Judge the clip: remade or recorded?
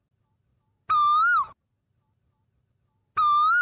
recorded